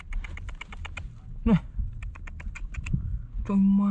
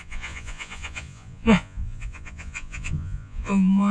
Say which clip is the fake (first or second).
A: second